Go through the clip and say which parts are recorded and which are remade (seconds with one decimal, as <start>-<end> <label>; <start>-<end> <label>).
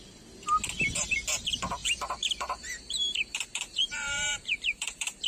0.0-1.8 recorded; 1.8-5.3 remade